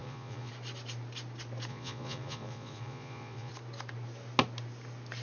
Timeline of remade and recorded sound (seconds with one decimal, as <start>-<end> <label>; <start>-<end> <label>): 0.0-0.5 remade; 0.5-1.7 recorded; 1.7-3.5 remade; 3.5-5.2 recorded